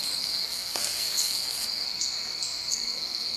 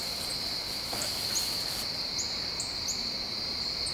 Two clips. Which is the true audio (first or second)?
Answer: second